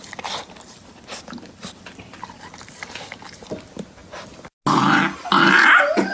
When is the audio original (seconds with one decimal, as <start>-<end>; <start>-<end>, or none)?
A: 0.0-6.1